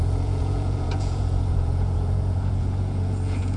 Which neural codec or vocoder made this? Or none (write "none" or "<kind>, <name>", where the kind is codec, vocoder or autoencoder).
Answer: vocoder, Vocos